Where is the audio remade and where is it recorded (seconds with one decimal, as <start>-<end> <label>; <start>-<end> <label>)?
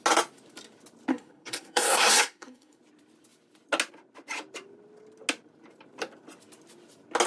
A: 0.0-1.1 recorded; 1.1-2.8 remade; 2.8-7.3 recorded